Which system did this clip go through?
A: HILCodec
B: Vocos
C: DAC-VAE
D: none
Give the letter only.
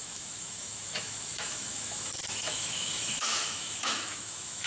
C